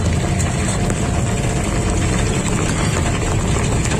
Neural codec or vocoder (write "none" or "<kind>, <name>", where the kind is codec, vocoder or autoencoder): none